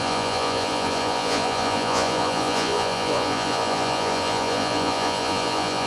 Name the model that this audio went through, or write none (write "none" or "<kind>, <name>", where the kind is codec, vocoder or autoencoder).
vocoder, Vocos